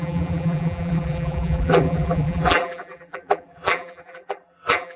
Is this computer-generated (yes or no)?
yes